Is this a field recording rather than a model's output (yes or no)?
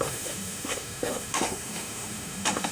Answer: no